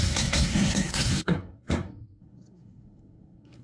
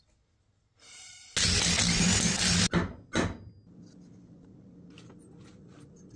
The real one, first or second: second